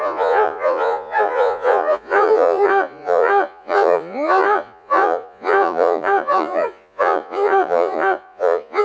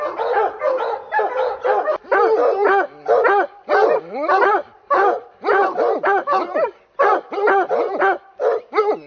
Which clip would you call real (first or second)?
second